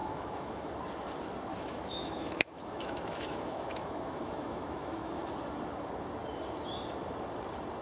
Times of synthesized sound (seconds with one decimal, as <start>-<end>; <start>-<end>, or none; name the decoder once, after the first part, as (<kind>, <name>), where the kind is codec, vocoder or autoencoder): 0.0-0.7 (autoencoder, DAC-VAE); 1.5-5.3